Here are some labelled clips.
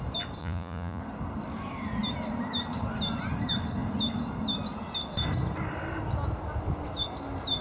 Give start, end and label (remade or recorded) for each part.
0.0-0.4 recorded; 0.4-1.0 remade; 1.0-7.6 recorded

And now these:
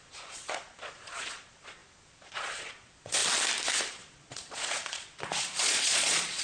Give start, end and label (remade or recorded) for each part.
0.0-3.2 remade; 3.2-3.9 recorded; 3.9-6.4 remade

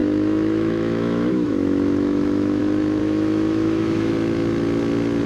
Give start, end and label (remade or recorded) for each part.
0.0-2.6 remade; 2.6-3.0 recorded; 3.0-4.1 remade; 4.1-5.3 recorded

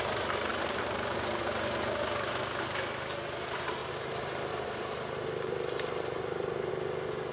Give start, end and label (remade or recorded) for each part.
0.0-0.5 recorded; 0.5-1.3 remade; 1.3-3.8 recorded; 3.8-6.7 remade; 6.7-7.3 recorded

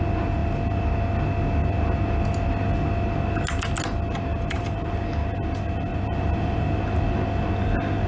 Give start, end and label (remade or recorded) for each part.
0.0-4.3 recorded; 4.3-4.9 remade; 4.9-5.9 recorded; 5.9-6.8 remade; 6.8-8.1 recorded

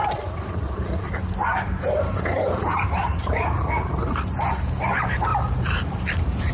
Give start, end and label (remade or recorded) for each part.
0.0-6.5 remade

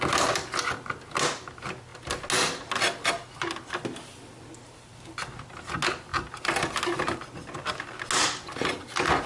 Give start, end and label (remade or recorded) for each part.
0.0-9.3 recorded

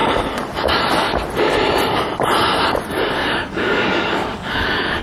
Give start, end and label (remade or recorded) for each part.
0.0-3.2 recorded; 3.2-5.0 remade